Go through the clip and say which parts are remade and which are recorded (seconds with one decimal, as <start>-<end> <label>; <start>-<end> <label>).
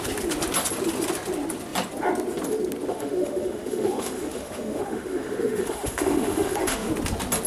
0.0-2.9 recorded; 2.9-6.9 remade; 6.9-7.5 recorded